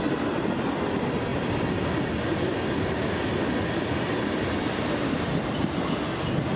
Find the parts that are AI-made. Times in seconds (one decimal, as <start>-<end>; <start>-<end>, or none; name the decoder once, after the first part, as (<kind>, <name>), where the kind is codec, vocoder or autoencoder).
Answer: 4.6-5.7 (vocoder, BigVGAN v2)